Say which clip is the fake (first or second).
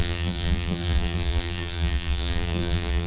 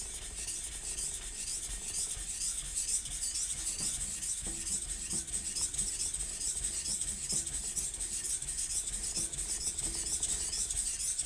first